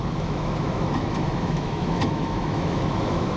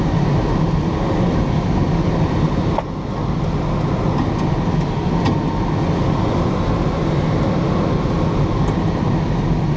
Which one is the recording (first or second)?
second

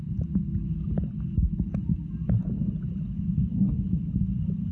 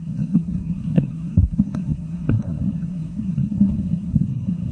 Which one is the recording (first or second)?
first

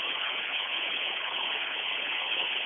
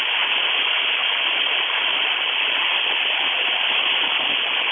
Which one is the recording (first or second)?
second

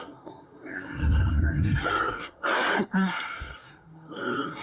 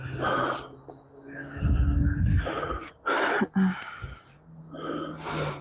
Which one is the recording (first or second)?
second